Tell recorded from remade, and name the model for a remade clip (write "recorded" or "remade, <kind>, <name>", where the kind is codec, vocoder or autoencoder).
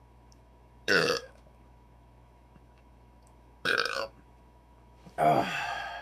remade, autoencoder, DAC-VAE